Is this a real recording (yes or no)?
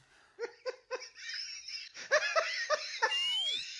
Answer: yes